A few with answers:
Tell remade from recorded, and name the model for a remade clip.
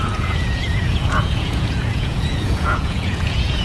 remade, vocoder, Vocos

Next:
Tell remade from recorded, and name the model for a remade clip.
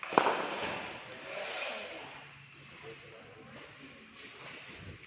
recorded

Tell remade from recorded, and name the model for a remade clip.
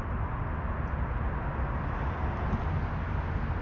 recorded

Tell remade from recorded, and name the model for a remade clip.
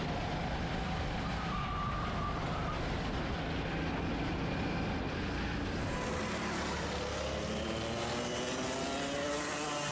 recorded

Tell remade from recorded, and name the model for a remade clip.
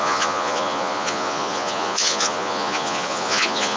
remade, vocoder, Vocos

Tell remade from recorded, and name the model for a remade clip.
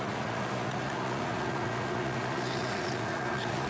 remade, vocoder, Vocos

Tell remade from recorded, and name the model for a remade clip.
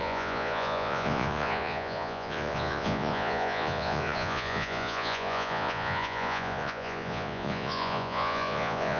remade, vocoder, Vocos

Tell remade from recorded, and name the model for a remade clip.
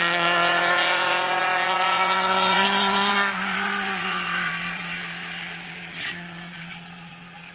remade, vocoder, Vocos